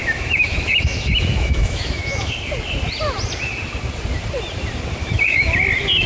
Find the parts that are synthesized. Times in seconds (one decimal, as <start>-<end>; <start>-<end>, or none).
0.0-2.3; 5.0-5.5